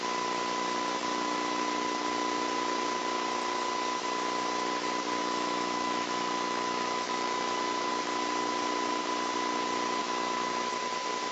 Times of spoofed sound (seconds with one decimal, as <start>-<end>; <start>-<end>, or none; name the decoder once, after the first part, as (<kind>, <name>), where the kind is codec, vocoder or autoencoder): 5.2-7.9 (autoencoder, DAC-VAE); 10.0-10.7